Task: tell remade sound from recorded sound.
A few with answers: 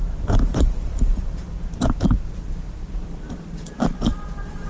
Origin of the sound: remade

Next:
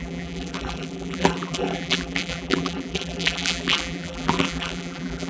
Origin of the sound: remade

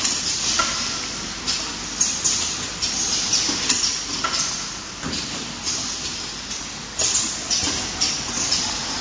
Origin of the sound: remade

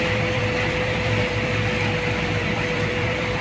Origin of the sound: remade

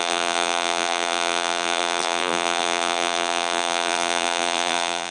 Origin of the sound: remade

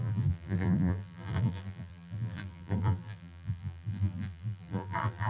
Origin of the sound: remade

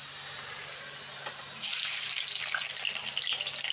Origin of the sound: recorded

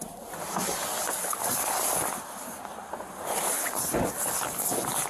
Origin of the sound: recorded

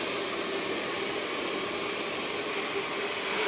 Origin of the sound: recorded